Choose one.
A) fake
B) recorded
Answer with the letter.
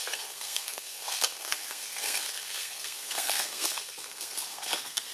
A